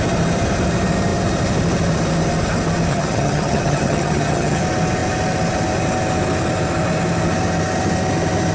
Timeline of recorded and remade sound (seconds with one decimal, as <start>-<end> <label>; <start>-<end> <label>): 0.0-2.9 recorded; 2.9-4.6 remade; 4.6-8.5 recorded